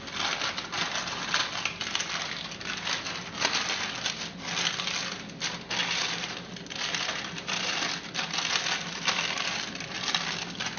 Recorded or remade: recorded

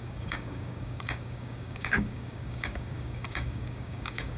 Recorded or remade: remade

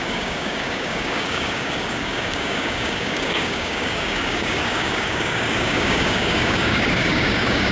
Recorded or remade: remade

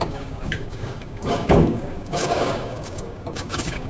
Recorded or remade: remade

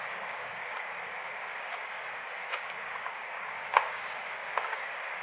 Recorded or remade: remade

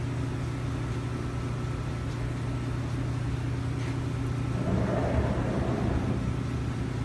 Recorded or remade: recorded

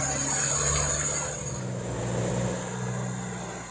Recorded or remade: recorded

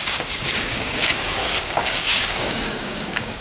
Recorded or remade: remade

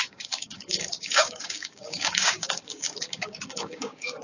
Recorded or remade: remade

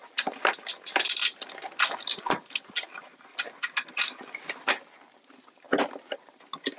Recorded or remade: recorded